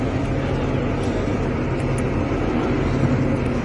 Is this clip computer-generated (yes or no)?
no